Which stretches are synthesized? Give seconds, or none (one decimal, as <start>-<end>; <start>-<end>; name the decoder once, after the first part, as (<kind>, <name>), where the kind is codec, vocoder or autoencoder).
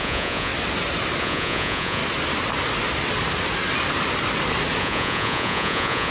0.0-0.5 (vocoder, Vocos); 1.2-2.0; 4.8-6.1